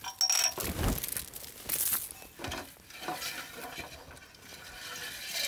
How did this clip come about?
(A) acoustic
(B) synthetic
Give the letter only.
A